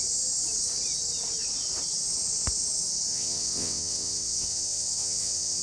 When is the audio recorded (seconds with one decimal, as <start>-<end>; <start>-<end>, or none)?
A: 0.0-3.1